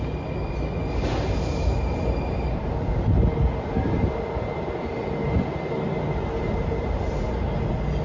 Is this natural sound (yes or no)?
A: yes